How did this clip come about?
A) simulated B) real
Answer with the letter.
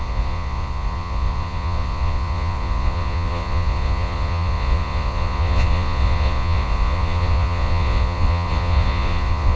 A